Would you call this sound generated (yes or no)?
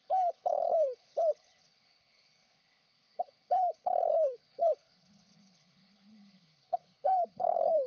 yes